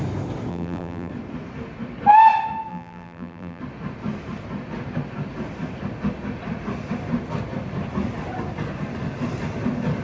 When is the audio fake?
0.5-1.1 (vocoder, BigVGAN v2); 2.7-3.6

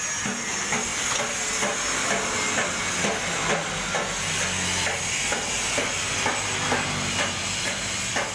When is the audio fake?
none

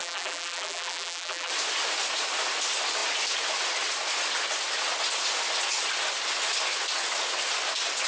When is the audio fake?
0.0-1.5 (vocoder, BigVGAN v2)

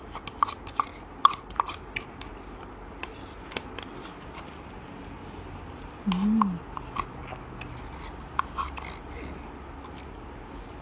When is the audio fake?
0.9-1.8 (vocoder, BigVGAN v2)

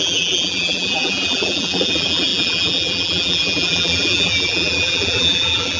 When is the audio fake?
0.0-5.8 (vocoder, BigVGAN v2)